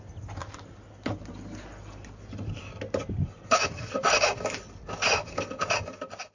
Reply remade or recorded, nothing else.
recorded